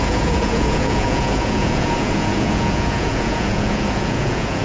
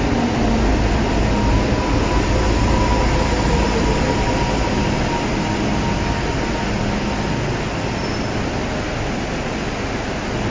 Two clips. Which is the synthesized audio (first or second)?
first